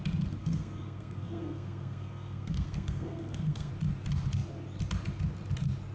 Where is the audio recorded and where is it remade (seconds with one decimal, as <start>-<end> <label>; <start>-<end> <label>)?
0.0-0.4 recorded; 0.4-3.7 remade; 3.7-5.9 recorded